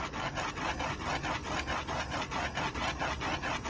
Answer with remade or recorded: recorded